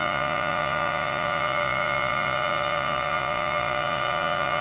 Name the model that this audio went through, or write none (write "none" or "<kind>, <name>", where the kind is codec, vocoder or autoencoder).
vocoder, Vocos